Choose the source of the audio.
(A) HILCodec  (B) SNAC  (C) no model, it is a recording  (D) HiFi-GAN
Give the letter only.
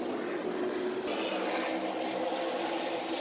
C